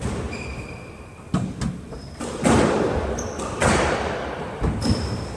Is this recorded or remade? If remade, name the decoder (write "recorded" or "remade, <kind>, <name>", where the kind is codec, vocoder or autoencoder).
recorded